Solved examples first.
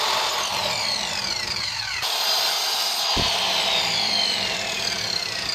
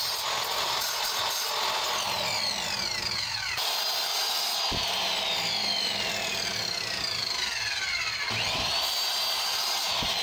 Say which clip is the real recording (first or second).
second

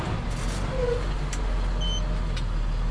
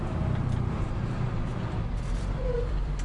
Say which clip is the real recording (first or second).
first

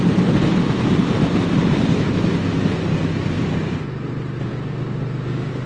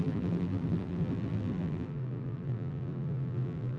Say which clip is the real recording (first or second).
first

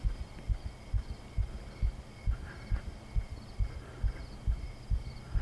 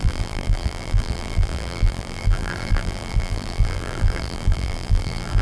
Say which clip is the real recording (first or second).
first